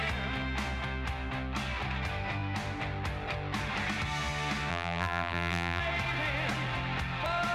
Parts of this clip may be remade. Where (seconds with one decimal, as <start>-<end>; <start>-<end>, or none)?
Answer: 4.7-5.8